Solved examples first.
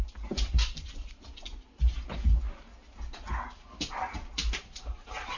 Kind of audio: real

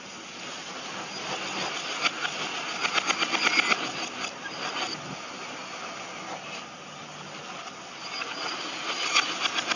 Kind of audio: real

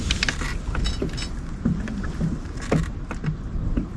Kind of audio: real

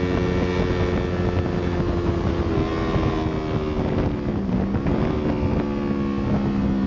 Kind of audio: real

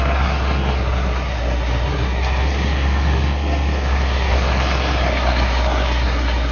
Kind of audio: fake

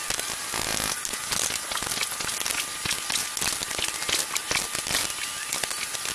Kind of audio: real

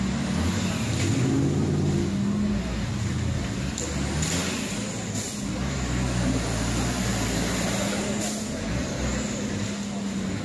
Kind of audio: real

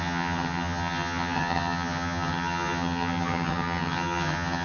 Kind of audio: fake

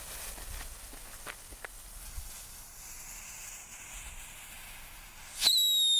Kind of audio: real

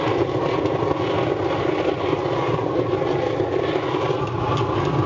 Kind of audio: real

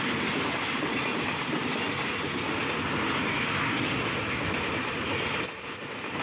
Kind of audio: real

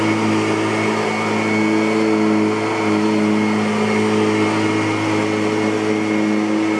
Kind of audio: real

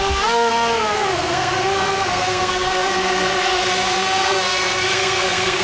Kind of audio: fake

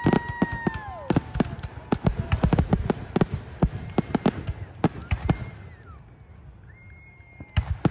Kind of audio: real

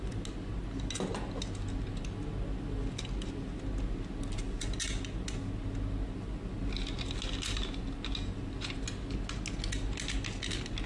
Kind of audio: real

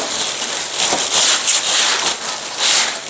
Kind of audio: real